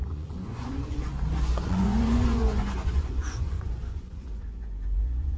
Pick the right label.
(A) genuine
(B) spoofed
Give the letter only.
B